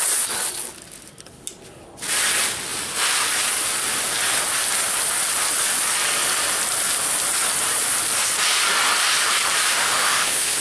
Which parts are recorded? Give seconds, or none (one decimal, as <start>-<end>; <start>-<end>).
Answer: 0.0-9.7